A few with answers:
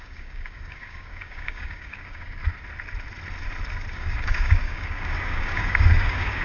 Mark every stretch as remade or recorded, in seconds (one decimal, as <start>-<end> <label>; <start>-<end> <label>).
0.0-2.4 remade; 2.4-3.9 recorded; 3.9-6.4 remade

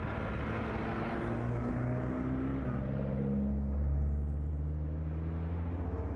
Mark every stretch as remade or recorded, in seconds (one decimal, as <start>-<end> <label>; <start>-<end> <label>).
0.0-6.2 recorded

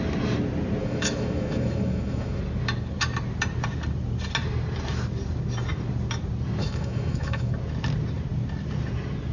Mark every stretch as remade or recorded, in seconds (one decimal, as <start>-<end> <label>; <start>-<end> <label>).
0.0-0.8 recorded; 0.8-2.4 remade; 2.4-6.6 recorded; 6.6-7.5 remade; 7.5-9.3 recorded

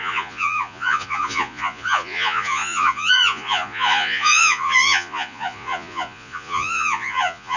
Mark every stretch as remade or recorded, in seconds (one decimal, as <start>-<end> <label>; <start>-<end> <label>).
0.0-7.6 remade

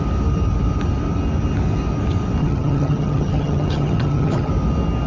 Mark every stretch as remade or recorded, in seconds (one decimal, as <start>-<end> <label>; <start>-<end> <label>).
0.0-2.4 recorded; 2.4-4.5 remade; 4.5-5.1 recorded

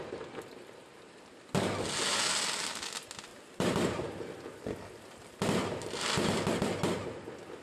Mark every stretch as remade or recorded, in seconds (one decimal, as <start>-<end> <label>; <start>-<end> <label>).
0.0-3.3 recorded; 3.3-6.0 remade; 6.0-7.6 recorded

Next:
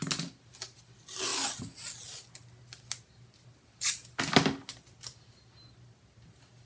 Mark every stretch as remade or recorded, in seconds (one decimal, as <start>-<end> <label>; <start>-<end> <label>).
0.0-6.7 recorded